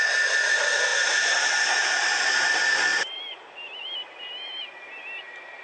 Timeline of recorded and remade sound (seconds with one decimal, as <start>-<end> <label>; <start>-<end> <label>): 0.0-0.9 recorded; 0.9-1.5 remade; 1.5-2.9 recorded; 2.9-5.6 remade